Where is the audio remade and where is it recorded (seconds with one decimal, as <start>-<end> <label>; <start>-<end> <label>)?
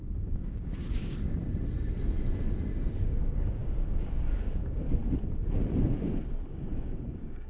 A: 0.0-1.4 remade; 1.4-2.9 recorded; 2.9-5.0 remade; 5.0-6.4 recorded; 6.4-7.5 remade